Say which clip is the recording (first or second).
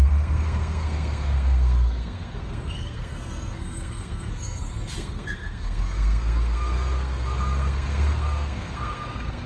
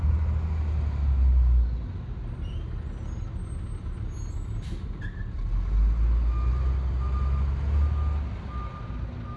second